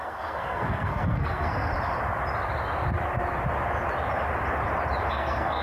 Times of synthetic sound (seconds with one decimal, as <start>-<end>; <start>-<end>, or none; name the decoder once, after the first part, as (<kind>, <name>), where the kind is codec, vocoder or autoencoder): 0.0-1.7 (codec, SNAC); 5.1-5.6